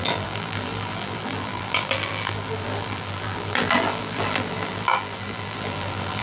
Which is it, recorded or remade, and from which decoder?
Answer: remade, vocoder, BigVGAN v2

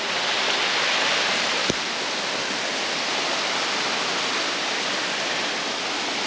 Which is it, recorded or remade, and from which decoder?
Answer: recorded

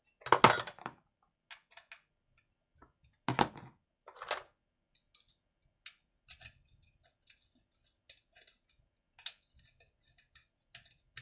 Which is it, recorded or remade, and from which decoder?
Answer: recorded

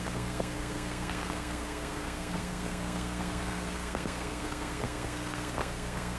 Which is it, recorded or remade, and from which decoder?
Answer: remade, codec, SNAC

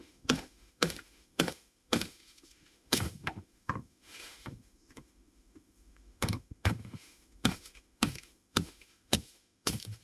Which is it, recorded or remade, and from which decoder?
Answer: remade, autoencoder, DAC-VAE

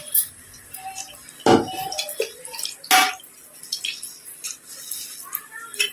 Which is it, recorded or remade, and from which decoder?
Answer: recorded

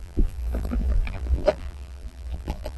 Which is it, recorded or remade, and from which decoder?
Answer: remade, vocoder, BigVGAN v2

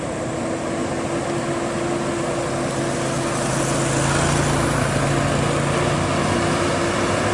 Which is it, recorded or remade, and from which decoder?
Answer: recorded